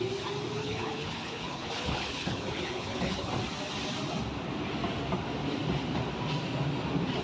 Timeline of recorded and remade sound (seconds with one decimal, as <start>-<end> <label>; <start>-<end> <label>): 0.0-0.6 recorded; 0.6-3.3 remade; 3.3-7.2 recorded